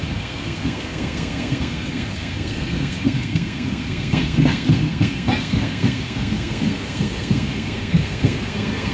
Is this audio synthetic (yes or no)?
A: yes